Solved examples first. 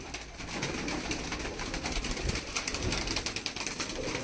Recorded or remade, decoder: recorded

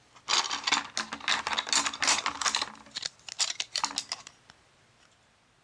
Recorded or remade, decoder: recorded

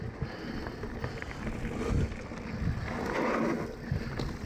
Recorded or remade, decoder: recorded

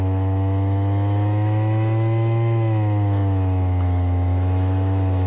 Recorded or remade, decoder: remade, autoencoder, DAC-VAE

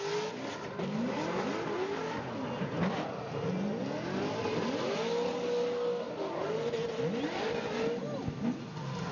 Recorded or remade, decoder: recorded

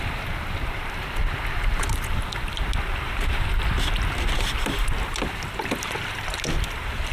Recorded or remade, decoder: recorded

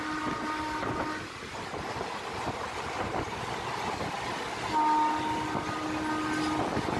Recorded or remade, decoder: recorded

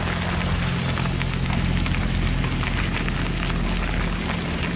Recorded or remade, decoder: recorded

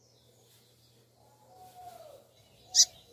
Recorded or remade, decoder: recorded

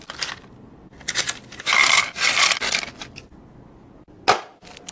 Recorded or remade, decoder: recorded